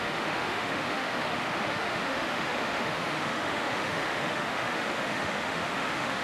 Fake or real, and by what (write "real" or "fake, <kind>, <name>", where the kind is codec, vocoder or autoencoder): fake, autoencoder, DAC-VAE